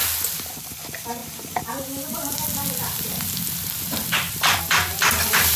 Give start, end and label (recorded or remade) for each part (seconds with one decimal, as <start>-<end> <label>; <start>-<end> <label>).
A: 0.0-0.6 recorded; 0.6-5.6 remade